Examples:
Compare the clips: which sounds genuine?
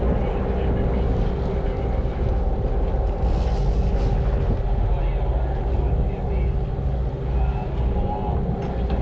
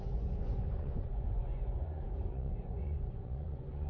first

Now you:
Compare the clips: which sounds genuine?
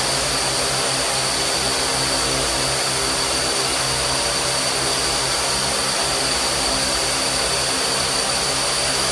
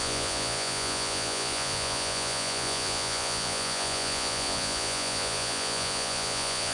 first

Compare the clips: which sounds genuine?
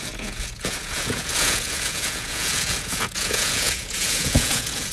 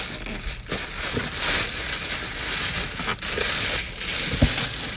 second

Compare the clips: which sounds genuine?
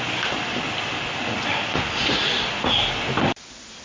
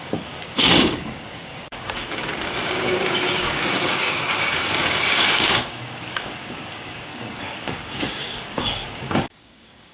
first